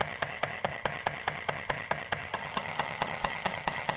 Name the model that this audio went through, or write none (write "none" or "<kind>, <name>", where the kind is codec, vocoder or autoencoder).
vocoder, HiFi-GAN